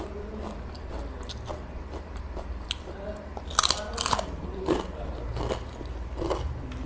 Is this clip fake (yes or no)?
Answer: no